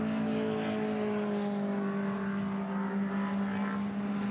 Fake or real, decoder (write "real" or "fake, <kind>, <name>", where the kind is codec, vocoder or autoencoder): real